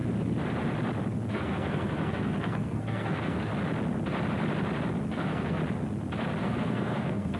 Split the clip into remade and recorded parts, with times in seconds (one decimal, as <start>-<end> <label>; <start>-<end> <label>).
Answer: 0.0-1.3 recorded; 1.3-3.5 remade; 3.5-5.1 recorded; 5.1-5.6 remade; 5.6-6.4 recorded; 6.4-7.4 remade